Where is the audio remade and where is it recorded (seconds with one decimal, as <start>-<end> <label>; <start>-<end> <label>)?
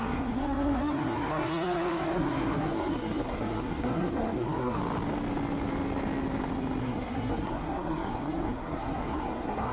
0.0-4.8 remade; 4.8-6.8 recorded; 6.8-9.7 remade